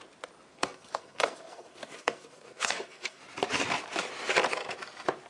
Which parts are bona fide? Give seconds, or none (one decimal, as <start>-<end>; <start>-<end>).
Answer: 0.0-0.5; 3.2-5.3